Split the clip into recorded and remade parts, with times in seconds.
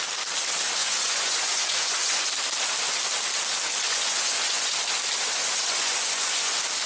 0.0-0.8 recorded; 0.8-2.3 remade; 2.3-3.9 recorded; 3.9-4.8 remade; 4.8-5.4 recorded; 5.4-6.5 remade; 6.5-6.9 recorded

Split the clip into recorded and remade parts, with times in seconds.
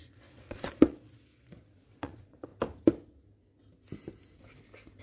0.0-2.5 remade; 2.5-5.0 recorded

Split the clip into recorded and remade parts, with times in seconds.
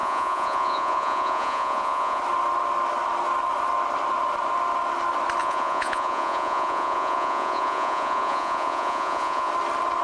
0.0-2.2 remade; 2.2-5.4 recorded; 5.4-9.5 remade; 9.5-10.0 recorded